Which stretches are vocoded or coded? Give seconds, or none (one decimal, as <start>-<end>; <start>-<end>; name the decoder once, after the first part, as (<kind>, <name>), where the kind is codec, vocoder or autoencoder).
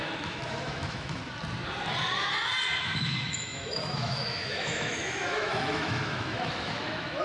0.0-1.2 (autoencoder, DAC-VAE); 2.8-7.2